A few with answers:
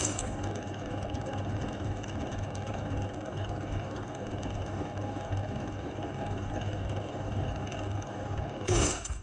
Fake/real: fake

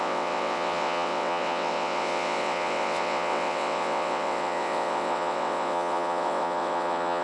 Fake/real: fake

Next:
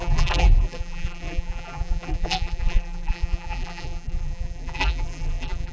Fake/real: fake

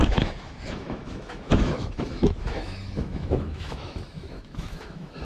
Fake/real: fake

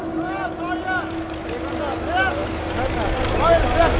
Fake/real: real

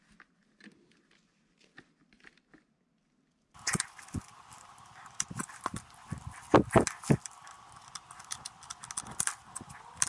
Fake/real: real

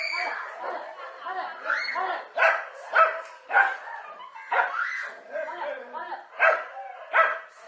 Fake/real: real